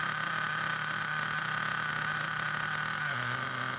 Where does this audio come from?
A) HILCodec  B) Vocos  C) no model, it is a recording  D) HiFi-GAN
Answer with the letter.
C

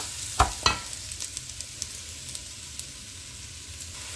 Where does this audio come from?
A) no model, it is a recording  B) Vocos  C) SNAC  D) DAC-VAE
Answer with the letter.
A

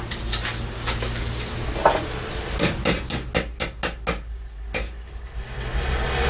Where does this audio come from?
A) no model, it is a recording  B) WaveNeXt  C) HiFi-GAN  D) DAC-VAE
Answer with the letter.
A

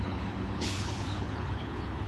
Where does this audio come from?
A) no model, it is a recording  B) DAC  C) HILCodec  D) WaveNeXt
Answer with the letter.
C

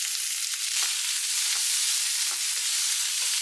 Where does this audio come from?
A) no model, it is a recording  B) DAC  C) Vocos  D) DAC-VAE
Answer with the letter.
A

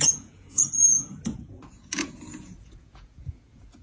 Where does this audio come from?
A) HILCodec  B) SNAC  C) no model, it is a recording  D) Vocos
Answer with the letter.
D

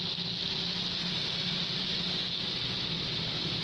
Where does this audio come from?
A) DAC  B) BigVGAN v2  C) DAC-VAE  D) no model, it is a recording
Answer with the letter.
D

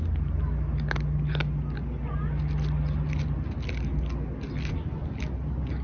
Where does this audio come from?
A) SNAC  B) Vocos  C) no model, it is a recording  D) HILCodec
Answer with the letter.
C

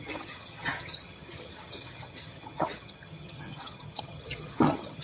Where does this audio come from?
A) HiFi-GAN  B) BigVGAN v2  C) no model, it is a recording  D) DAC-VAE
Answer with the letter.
A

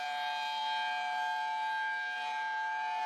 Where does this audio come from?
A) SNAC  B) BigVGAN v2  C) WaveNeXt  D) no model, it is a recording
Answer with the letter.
D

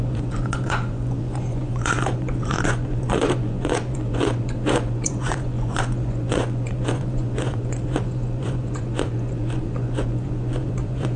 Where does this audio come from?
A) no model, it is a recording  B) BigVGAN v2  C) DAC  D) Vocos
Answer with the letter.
D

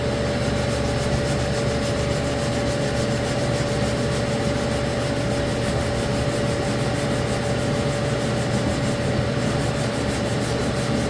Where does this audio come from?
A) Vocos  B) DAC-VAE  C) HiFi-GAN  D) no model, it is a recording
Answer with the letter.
D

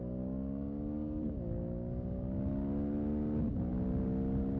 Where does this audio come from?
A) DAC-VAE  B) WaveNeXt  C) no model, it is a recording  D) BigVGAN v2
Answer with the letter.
C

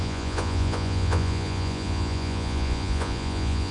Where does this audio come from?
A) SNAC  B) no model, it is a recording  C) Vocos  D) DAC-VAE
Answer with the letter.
C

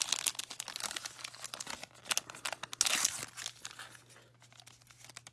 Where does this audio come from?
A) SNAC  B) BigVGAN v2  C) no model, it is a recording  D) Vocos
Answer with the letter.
C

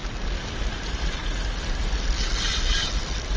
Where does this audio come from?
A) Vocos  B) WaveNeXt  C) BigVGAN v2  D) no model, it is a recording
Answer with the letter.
D